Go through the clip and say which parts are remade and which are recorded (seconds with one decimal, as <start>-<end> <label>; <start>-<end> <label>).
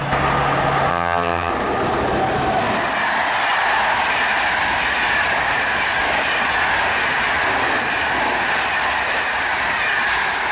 0.0-0.9 recorded; 0.9-1.5 remade; 1.5-10.5 recorded